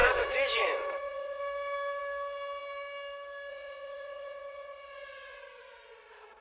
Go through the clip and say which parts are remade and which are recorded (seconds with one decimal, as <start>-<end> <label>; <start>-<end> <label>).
0.0-1.4 remade; 1.4-3.5 recorded; 3.5-5.4 remade; 5.4-6.4 recorded

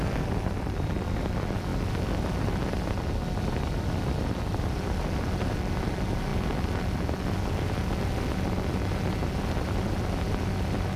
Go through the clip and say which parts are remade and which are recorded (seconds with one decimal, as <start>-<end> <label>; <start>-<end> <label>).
0.0-11.0 recorded

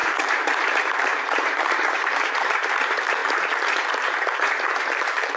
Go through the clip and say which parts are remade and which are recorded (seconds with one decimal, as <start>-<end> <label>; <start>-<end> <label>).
0.0-5.4 remade

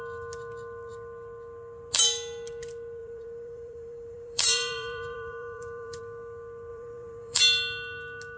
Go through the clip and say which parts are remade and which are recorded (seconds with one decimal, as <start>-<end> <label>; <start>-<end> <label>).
0.0-3.0 recorded; 3.0-6.0 remade; 6.0-6.7 recorded; 6.7-7.4 remade; 7.4-8.4 recorded